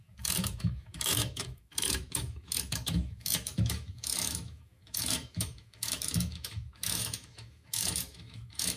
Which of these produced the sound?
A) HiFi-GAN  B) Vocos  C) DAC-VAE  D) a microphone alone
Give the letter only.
C